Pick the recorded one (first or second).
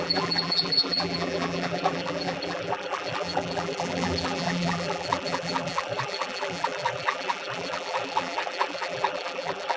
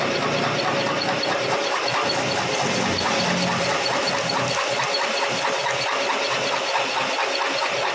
second